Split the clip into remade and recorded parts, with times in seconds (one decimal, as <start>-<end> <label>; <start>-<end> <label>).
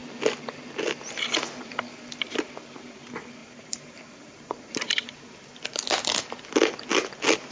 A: 0.0-3.4 recorded; 3.4-5.1 remade; 5.1-7.5 recorded